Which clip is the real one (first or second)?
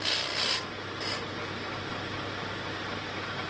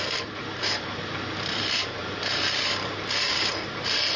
first